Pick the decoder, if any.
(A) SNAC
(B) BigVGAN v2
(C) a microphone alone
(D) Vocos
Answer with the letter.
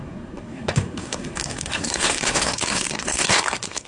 A